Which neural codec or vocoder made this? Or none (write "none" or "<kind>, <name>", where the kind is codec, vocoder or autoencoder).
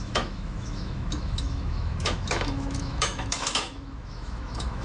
autoencoder, DAC-VAE